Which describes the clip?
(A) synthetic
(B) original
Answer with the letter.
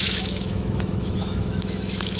A